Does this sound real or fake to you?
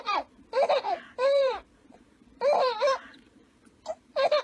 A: fake